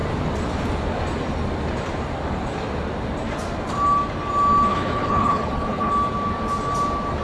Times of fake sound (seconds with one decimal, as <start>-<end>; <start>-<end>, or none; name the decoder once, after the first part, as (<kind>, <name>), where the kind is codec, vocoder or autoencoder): 4.7-5.9 (codec, HILCodec)